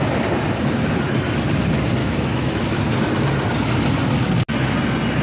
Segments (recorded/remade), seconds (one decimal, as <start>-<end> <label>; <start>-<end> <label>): 0.0-2.0 recorded; 2.0-2.8 remade; 2.8-5.2 recorded